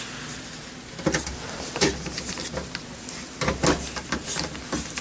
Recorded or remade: recorded